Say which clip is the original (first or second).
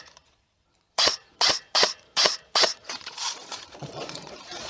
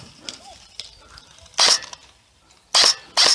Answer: second